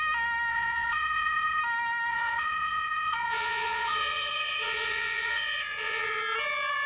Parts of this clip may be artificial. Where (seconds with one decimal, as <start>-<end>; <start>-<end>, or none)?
0.5-1.6; 2.1-6.2